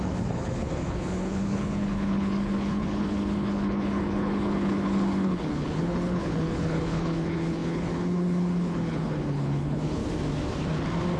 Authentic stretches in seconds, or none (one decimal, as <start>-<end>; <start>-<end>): 10.0-11.2